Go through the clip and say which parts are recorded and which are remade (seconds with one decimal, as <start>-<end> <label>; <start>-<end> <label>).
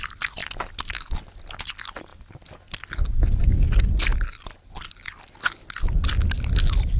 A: 0.0-0.4 recorded; 0.4-0.9 remade; 0.9-4.1 recorded; 4.1-5.3 remade; 5.3-7.0 recorded